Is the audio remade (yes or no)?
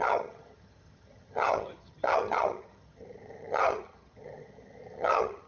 yes